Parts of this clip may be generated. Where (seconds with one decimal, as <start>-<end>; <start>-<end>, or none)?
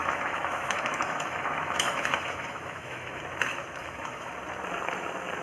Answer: 0.0-3.2; 3.8-4.3